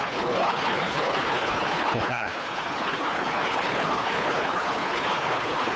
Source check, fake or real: fake